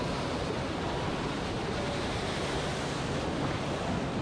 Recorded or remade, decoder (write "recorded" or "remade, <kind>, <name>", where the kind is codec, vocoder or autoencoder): recorded